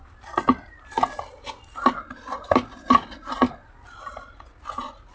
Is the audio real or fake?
real